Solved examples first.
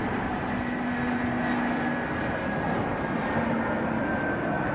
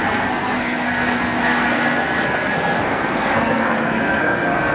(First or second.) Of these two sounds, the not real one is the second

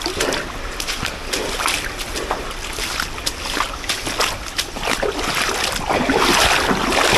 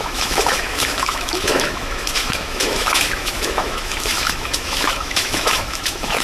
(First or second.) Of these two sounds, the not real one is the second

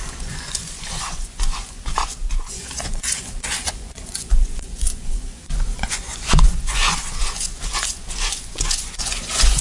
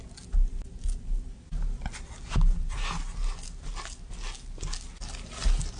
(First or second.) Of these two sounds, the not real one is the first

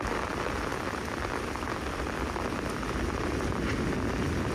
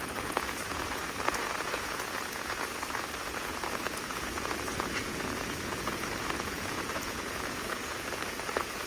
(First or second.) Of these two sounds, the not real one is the second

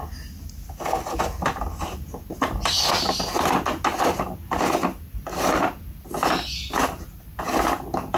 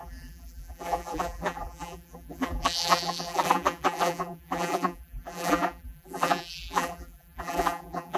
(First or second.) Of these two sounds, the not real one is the second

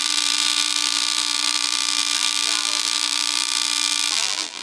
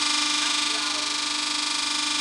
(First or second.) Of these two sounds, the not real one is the first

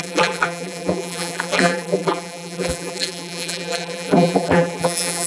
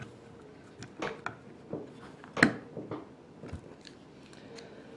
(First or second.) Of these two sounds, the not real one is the first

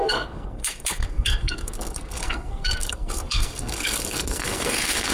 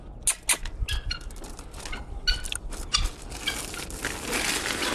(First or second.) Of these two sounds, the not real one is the first